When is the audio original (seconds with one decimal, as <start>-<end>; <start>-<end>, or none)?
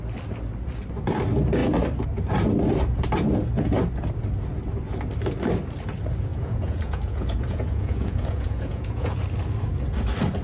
0.0-6.3; 9.2-10.4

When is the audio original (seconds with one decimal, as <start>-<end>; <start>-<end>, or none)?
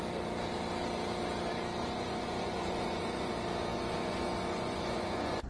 0.0-1.8; 3.3-3.7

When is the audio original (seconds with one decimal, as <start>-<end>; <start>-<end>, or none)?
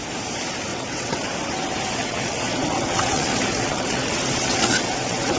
0.0-0.7; 1.3-2.0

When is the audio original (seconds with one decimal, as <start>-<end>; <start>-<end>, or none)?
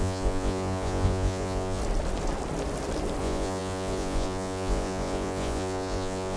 1.8-3.2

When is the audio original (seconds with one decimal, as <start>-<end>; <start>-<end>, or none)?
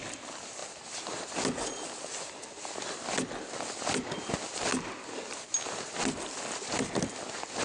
0.0-7.6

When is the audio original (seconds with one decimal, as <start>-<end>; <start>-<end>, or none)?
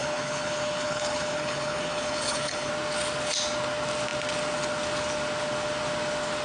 2.7-6.4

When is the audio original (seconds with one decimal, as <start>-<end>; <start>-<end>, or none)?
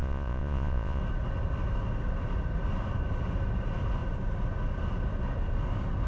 1.0-6.1